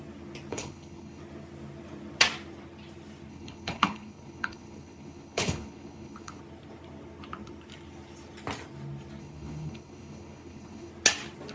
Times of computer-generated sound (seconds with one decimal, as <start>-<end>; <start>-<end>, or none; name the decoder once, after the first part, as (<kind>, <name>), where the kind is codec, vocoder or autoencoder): 0.5-1.2 (codec, HILCodec); 3.3-6.4; 9.2-10.9

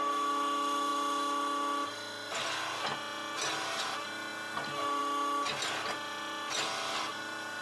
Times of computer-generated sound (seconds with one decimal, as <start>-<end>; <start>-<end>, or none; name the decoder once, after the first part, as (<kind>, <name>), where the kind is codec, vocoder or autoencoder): none

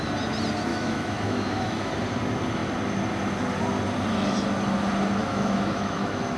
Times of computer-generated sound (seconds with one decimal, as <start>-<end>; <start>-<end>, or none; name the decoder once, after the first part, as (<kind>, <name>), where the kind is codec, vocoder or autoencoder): 0.7-1.9 (autoencoder, DAC-VAE); 5.2-6.4

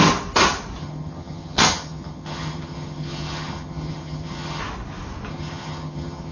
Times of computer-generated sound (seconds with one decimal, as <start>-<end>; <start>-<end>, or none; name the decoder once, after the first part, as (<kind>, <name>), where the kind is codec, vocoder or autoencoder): 0.8-4.6 (vocoder, HiFi-GAN); 5.3-6.3

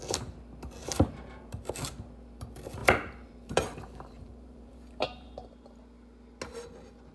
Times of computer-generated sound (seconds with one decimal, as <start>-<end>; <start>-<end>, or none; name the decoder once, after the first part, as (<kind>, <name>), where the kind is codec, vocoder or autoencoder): 0.8-1.7 (vocoder, BigVGAN v2); 2.8-5.8